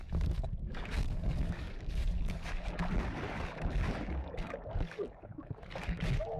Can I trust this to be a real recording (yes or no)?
no